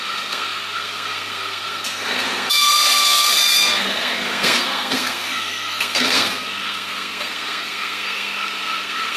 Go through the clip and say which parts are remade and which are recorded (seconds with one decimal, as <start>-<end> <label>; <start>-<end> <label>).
0.0-9.2 remade